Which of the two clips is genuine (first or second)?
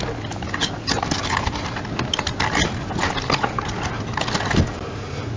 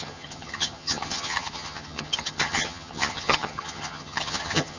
first